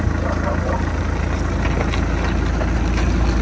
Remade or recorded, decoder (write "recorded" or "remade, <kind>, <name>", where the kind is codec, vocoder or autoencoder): recorded